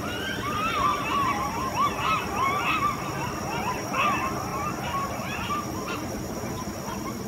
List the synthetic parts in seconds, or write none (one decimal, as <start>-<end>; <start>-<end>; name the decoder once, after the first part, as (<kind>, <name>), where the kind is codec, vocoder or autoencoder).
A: 0.9-2.5 (vocoder, BigVGAN v2); 4.5-6.8